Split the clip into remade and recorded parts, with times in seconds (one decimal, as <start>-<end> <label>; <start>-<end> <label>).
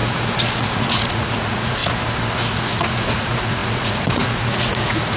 0.0-1.8 remade; 1.8-2.5 recorded; 2.5-5.2 remade